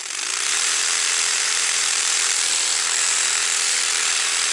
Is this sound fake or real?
fake